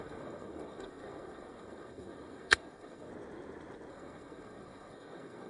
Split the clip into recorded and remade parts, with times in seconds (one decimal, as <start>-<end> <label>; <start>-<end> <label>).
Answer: 0.0-3.1 remade; 3.1-3.9 recorded; 3.9-5.5 remade